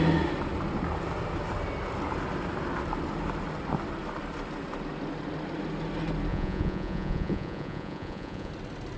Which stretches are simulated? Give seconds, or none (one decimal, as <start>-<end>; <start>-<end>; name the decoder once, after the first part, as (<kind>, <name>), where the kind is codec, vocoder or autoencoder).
6.3-8.5 (vocoder, Vocos)